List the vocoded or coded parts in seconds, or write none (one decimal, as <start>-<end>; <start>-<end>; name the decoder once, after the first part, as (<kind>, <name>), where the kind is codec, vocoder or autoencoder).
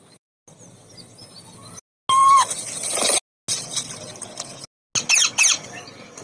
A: none